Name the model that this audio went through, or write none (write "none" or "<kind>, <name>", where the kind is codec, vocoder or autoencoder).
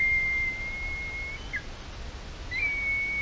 none